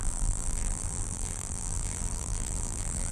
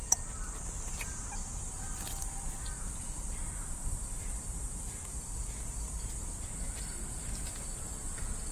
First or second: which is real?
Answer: second